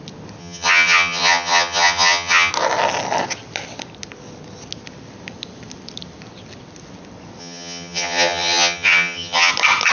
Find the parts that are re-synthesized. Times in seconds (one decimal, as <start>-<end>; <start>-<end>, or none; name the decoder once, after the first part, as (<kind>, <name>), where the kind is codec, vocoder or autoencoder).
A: 0.4-2.5 (vocoder, HiFi-GAN); 7.4-9.5

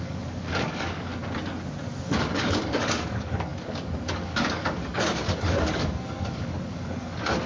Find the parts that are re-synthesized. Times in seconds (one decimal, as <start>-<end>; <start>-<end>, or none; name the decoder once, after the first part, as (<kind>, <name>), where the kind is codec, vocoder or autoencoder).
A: 0.0-1.1 (codec, DAC); 2.0-7.5

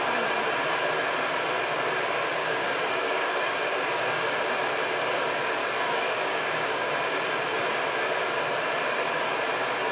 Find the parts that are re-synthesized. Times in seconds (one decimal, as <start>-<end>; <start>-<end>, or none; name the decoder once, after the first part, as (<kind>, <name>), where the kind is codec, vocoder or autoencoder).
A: 2.4-4.3 (codec, DAC); 5.6-6.9

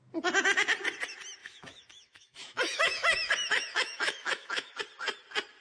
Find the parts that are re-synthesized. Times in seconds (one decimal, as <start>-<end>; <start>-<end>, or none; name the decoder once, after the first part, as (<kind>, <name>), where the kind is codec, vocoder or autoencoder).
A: 1.4-4.8 (autoencoder, DAC-VAE)

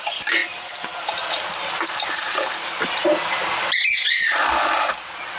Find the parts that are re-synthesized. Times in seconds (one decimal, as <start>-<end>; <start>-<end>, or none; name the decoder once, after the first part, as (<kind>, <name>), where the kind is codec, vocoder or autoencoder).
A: none

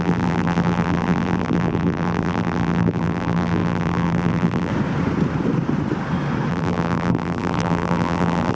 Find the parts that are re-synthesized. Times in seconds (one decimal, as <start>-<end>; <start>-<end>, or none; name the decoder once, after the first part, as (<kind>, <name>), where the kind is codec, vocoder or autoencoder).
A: 0.0-4.7 (vocoder, BigVGAN v2); 6.5-8.5